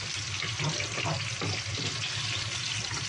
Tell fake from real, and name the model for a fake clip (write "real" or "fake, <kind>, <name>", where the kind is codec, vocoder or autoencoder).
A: real